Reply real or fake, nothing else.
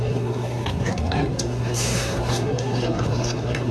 fake